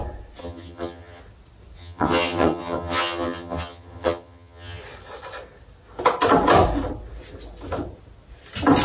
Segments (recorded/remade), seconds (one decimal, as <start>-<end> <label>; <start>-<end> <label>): 0.0-0.4 recorded; 0.4-1.2 remade; 1.2-1.8 recorded; 1.8-4.8 remade; 4.8-8.8 recorded